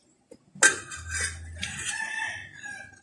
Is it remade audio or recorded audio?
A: recorded